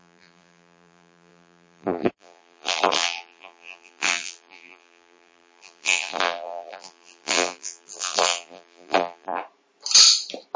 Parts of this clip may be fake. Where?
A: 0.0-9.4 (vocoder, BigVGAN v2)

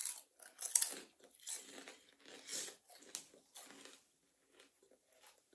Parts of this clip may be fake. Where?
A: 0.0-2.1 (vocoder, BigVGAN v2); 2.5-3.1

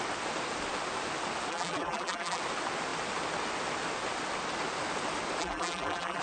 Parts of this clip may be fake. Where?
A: 1.5-2.4 (vocoder, BigVGAN v2); 5.4-6.2